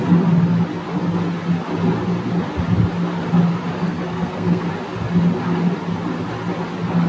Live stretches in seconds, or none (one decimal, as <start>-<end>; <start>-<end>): 0.0-3.8; 4.7-7.1